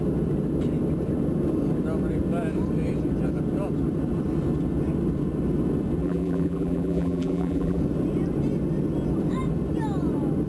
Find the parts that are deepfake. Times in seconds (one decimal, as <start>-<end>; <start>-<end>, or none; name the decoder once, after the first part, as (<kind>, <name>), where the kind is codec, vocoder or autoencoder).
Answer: 6.0-7.8 (vocoder, BigVGAN v2)